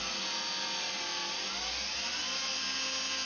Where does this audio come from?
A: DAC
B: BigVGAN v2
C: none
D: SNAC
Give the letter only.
C